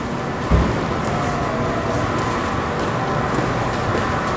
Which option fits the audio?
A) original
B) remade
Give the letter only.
A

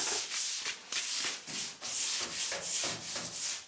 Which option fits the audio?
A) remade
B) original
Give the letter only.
B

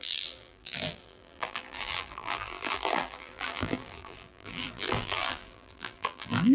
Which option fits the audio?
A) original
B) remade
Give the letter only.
B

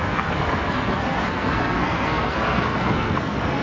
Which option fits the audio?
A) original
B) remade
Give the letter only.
B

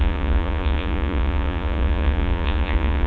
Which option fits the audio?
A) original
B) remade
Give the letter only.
B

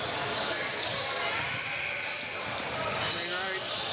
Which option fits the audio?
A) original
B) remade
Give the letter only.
A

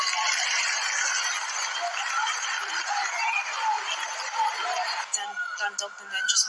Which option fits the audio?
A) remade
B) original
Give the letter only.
B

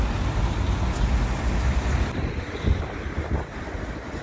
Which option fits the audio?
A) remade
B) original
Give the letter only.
B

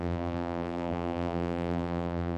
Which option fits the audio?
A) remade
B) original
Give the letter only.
A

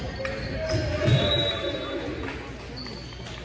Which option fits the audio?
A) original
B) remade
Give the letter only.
A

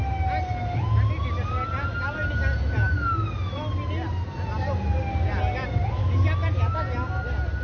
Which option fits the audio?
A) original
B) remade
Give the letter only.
A